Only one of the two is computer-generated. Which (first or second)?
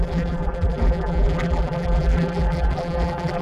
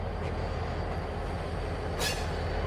first